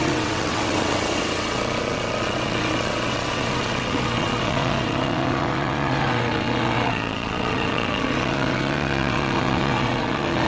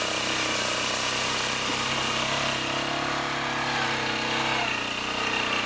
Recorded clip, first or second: second